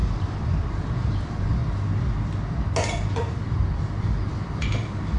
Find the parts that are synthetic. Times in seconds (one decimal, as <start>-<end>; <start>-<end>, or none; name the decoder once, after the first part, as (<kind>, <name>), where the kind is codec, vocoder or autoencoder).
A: 0.0-1.6 (vocoder, BigVGAN v2); 3.1-5.2